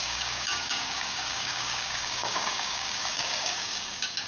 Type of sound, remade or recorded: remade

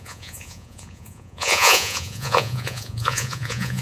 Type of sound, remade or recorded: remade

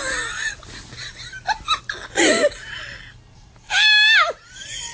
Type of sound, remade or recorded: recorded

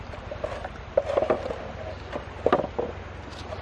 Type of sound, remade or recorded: remade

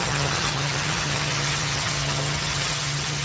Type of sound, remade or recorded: remade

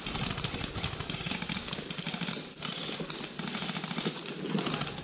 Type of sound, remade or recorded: recorded